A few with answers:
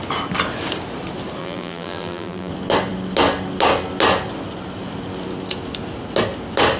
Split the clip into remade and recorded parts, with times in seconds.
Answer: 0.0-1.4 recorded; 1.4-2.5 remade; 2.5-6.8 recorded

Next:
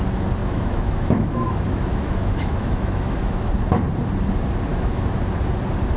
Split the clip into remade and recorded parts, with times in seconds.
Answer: 0.0-0.4 recorded; 0.4-3.5 remade; 3.5-4.7 recorded; 4.7-5.2 remade; 5.2-6.0 recorded